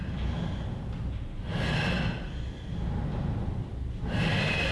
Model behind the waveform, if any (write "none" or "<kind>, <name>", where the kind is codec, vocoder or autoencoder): none